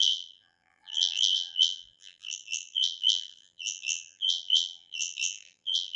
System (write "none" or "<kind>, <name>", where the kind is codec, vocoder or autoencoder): vocoder, BigVGAN v2